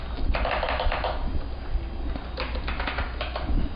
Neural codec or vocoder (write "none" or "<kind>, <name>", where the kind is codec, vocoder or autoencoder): none